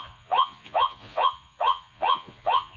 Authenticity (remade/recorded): remade